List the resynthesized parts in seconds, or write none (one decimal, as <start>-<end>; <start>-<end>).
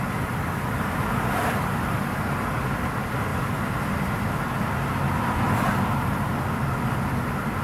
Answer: none